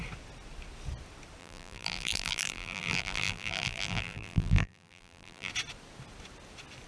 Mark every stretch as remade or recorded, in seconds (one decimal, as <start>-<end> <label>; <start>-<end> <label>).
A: 0.0-1.4 recorded; 1.4-5.5 remade; 5.5-6.9 recorded